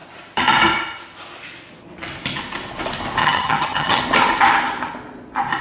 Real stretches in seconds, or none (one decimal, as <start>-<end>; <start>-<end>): 0.0-3.2; 4.0-5.6